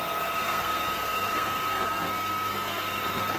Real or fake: fake